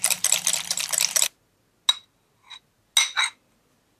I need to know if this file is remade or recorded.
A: recorded